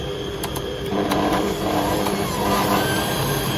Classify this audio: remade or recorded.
remade